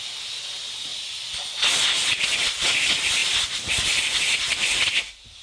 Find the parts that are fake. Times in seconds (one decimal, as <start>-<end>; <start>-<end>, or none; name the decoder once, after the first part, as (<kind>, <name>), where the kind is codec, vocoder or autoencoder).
3.2-4.1 (vocoder, BigVGAN v2)